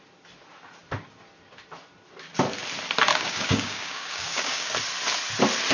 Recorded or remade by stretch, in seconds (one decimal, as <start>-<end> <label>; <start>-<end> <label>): 0.0-3.1 recorded; 3.1-4.7 remade; 4.7-5.7 recorded